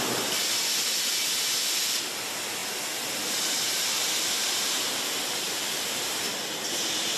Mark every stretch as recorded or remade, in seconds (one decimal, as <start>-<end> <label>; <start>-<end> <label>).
0.0-7.2 recorded